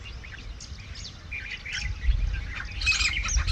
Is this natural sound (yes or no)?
yes